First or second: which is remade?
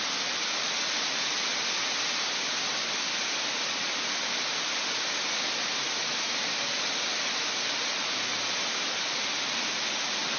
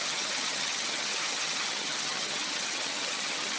second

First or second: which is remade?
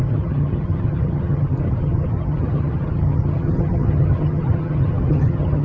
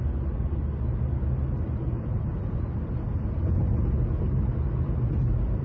first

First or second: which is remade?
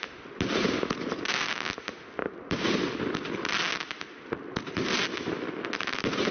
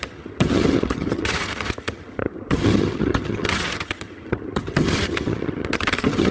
second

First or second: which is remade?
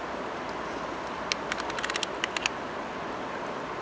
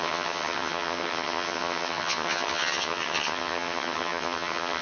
second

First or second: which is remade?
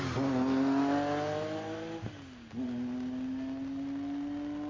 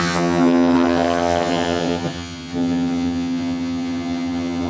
second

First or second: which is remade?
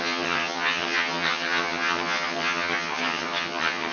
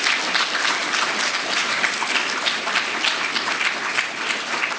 first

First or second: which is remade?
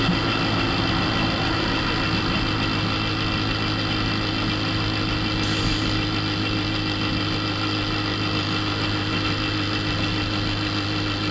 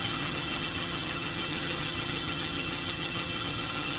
second